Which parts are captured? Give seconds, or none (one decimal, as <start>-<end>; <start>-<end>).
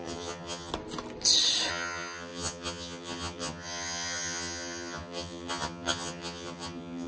0.7-1.7